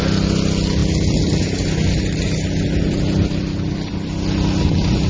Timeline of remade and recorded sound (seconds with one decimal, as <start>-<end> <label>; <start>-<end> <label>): 0.0-5.1 recorded